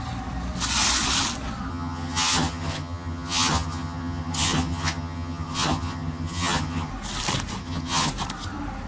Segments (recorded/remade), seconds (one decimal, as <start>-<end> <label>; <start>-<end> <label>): 0.0-1.7 recorded; 1.7-6.9 remade; 6.9-7.6 recorded; 7.6-8.1 remade; 8.1-8.9 recorded